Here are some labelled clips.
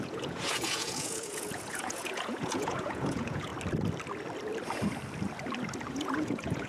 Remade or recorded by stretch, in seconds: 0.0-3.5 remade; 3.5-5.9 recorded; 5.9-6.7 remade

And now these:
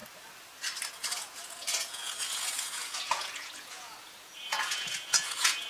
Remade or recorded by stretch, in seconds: 0.0-0.9 recorded; 0.9-5.7 remade

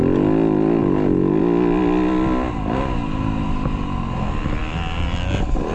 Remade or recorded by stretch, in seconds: 0.0-5.7 recorded

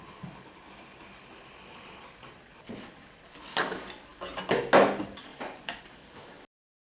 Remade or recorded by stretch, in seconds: 0.0-5.3 recorded; 5.3-5.8 remade; 5.8-6.9 recorded

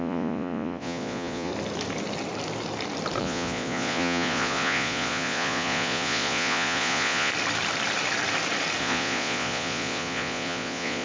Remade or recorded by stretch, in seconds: 0.0-1.5 remade; 1.5-3.2 recorded; 3.2-7.3 remade; 7.3-8.8 recorded; 8.8-11.0 remade

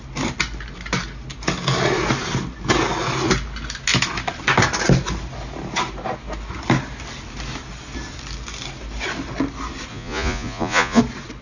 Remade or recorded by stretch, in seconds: 0.0-9.9 recorded; 9.9-11.0 remade; 11.0-11.4 recorded

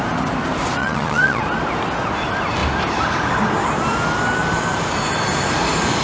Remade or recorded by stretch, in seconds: 0.0-0.8 recorded; 0.8-1.4 remade; 1.4-6.0 recorded